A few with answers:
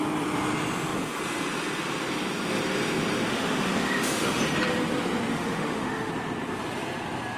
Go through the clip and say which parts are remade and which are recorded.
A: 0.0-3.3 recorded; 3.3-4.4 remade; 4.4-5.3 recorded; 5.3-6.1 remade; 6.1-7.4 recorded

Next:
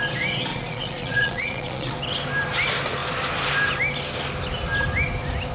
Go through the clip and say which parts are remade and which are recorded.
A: 0.0-0.5 recorded; 0.5-1.9 remade; 1.9-5.5 recorded

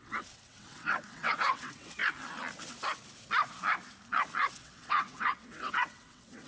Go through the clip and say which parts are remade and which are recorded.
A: 0.0-2.0 remade; 2.0-4.5 recorded; 4.5-6.5 remade

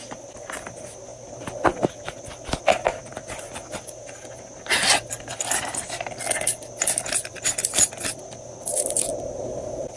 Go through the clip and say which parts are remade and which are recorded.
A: 0.0-9.1 recorded; 9.1-10.0 remade